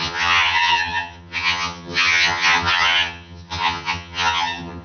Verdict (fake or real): fake